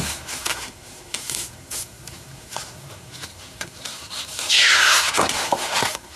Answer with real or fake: fake